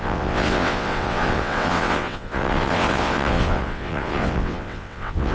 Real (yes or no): no